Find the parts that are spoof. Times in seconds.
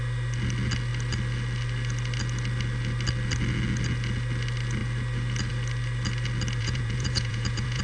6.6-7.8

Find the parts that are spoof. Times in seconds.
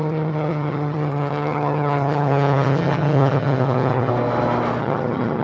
0.0-4.1; 4.8-5.4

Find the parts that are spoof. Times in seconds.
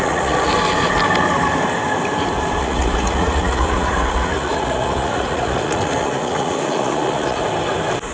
0.0-0.5; 2.6-7.4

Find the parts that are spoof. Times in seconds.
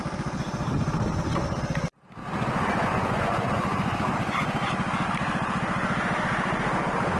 2.2-4.7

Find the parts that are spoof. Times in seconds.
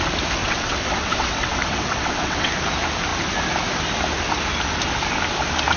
0.4-2.5